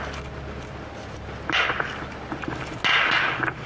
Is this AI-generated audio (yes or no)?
no